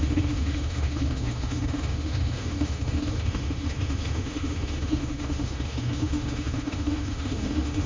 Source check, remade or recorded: remade